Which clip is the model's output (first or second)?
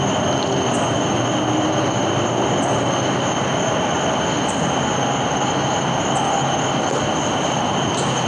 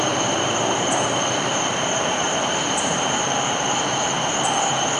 second